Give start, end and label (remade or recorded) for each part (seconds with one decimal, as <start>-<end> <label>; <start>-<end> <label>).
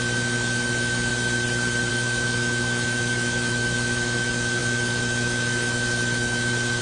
0.0-1.1 remade; 1.1-1.9 recorded; 1.9-6.8 remade